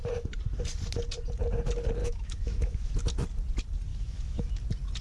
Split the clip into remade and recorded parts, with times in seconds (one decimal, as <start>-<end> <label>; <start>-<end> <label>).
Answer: 0.0-2.0 recorded; 2.0-2.9 remade; 2.9-3.9 recorded; 3.9-4.5 remade; 4.5-5.0 recorded